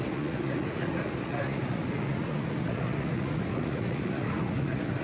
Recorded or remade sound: remade